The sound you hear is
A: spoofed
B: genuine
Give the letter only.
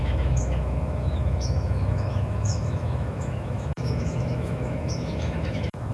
A